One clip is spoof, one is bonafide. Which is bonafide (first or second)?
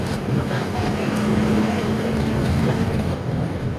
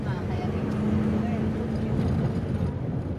second